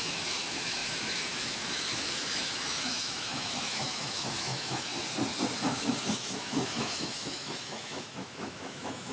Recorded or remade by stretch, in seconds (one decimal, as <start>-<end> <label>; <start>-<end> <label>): 0.0-4.9 remade; 4.9-5.7 recorded; 5.7-9.1 remade